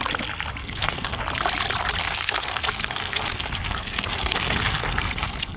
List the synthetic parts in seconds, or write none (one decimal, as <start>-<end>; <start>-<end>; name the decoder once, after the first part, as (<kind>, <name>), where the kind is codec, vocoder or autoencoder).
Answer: 0.6-1.2 (codec, SNAC); 2.0-5.6